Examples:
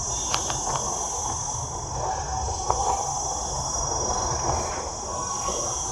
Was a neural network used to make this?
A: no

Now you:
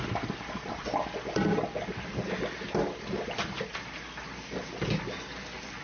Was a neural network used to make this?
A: no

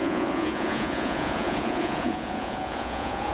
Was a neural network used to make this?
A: yes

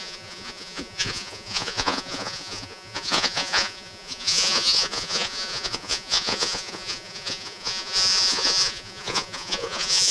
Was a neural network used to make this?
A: yes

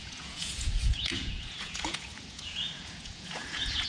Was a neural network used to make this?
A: yes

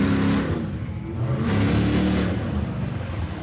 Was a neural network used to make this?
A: no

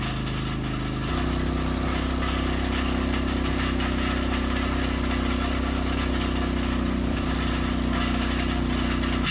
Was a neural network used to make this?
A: no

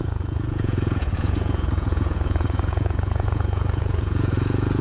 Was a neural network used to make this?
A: yes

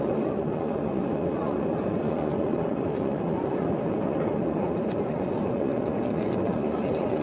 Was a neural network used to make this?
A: yes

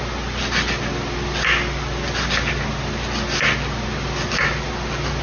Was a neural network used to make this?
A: no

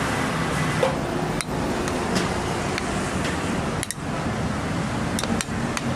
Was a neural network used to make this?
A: no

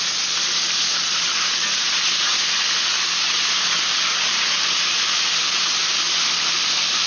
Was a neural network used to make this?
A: no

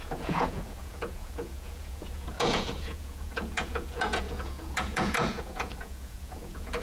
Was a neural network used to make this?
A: yes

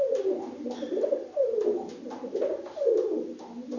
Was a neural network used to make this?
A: no